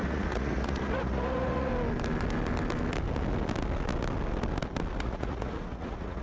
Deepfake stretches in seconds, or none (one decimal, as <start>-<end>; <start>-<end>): 0.0-1.7; 5.0-6.2